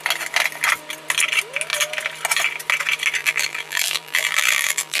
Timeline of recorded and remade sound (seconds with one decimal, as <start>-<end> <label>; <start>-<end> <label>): 0.0-3.2 recorded; 3.2-5.0 remade